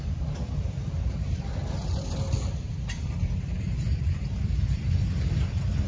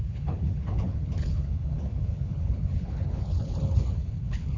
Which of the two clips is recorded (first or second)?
first